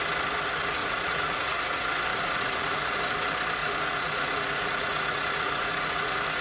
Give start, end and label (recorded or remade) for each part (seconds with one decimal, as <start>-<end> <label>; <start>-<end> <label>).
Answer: 0.0-0.8 recorded; 0.8-1.6 remade; 1.6-2.1 recorded; 2.1-3.0 remade; 3.0-3.6 recorded; 3.6-6.4 remade